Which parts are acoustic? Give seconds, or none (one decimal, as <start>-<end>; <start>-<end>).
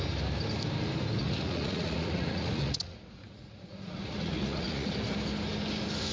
0.0-1.2; 4.9-6.1